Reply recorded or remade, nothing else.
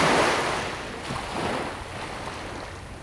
recorded